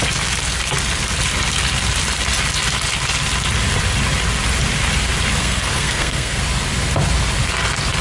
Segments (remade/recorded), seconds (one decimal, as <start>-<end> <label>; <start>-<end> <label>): 0.0-5.4 recorded; 5.4-6.4 remade; 6.4-8.0 recorded